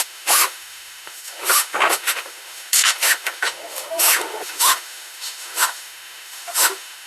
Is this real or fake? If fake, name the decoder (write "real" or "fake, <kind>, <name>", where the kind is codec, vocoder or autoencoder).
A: fake, autoencoder, DAC-VAE